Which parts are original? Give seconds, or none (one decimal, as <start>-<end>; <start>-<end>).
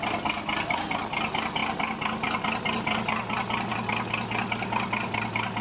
0.0-5.6